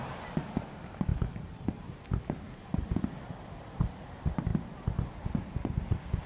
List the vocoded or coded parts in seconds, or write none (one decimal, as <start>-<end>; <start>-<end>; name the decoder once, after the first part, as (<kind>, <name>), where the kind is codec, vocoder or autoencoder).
none